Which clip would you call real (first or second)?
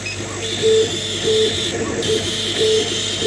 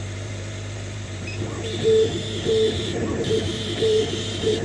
first